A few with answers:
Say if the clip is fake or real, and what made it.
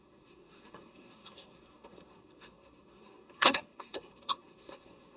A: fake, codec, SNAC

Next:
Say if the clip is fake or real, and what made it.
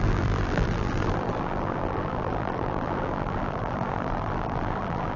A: fake, vocoder, BigVGAN v2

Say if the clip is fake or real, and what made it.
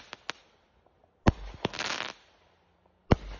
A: real